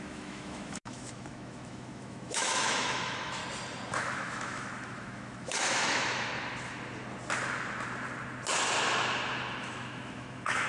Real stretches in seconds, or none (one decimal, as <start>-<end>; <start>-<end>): 3.4-3.9; 6.3-9.6